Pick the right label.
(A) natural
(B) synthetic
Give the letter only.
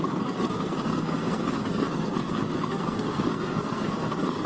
B